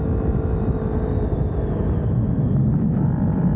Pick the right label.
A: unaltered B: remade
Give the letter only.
A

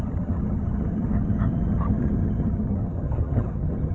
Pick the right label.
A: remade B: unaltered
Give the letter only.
A